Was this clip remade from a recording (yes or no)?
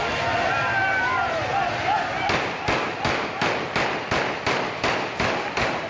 no